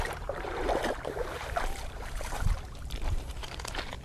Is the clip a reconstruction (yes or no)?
yes